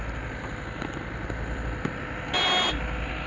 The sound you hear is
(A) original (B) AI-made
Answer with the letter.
B